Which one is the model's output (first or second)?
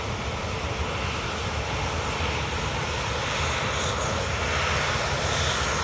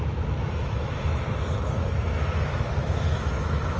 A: second